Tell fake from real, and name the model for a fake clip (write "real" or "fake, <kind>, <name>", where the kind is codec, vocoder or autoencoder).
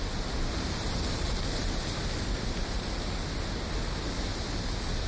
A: real